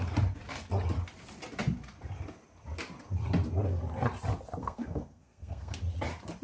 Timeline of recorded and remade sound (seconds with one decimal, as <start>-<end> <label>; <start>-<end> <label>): 0.0-4.6 recorded; 4.6-5.8 remade; 5.8-6.4 recorded